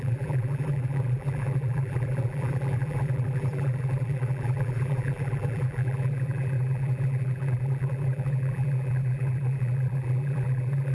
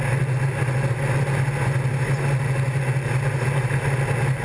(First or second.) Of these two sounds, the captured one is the second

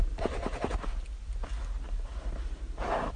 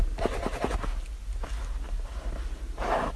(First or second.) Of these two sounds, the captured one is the second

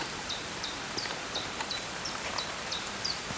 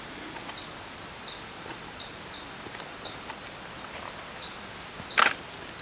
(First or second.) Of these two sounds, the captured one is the second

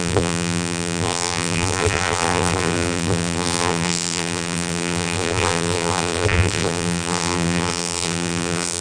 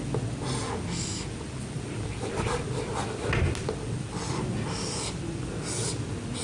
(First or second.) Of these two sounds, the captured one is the second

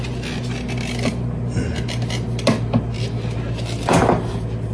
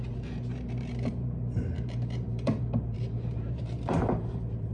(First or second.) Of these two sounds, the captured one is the first